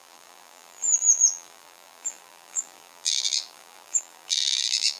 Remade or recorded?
remade